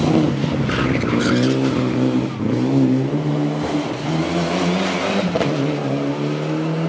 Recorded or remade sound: recorded